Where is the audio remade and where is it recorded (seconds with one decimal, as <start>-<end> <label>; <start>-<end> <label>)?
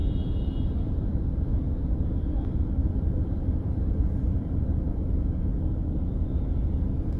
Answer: 0.0-2.8 recorded; 2.8-4.9 remade; 4.9-7.2 recorded